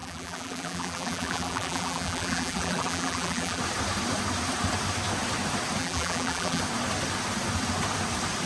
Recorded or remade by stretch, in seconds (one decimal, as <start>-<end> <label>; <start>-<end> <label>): 0.0-3.6 remade; 3.6-5.8 recorded; 5.8-6.6 remade; 6.6-8.5 recorded